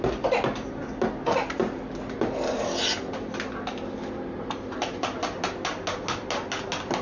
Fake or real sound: real